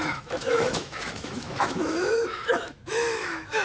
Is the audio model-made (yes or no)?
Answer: yes